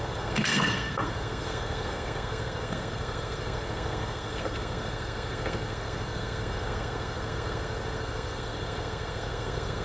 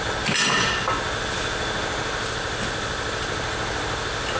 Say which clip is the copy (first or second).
first